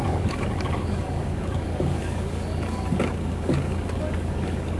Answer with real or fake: fake